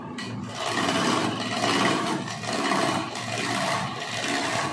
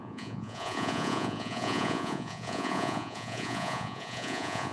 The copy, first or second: second